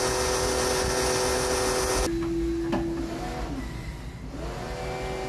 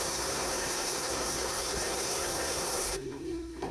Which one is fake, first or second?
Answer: second